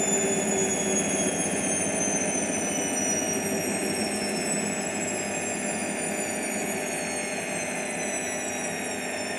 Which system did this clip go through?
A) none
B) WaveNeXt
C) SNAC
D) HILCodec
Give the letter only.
A